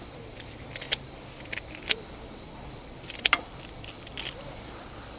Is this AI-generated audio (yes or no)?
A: no